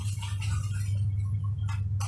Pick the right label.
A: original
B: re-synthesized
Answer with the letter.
A